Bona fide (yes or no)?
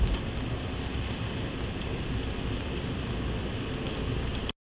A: yes